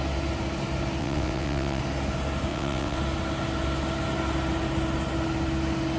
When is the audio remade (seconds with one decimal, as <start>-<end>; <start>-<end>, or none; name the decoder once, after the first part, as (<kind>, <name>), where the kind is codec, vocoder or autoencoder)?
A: 1.0-1.8 (vocoder, WaveNeXt); 2.5-3.0